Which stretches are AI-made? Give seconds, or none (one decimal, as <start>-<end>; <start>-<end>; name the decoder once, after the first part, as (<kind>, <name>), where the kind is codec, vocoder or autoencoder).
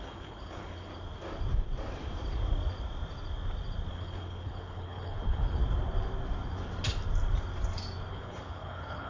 0.0-0.9 (codec, HILCodec); 3.9-5.6; 8.1-9.1